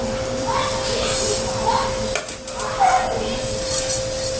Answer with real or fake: real